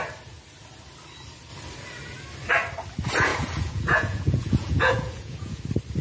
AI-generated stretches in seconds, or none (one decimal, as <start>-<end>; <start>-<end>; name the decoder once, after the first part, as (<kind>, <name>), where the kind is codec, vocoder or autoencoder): 3.3-5.6 (vocoder, Vocos)